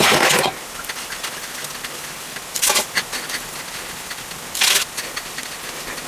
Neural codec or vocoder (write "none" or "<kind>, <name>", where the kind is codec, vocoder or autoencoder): none